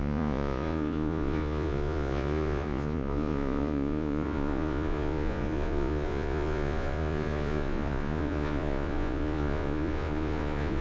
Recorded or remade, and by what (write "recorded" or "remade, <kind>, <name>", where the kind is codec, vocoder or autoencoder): remade, vocoder, Vocos